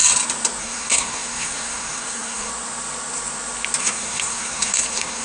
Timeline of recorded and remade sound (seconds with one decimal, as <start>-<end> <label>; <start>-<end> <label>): 0.0-0.6 recorded; 0.6-2.5 remade; 2.5-3.8 recorded; 3.8-5.2 remade